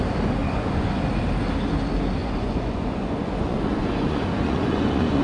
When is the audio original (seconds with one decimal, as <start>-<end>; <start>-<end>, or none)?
0.0-0.4; 1.0-2.2